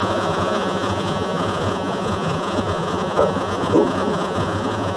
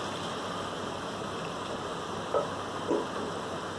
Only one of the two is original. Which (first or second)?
second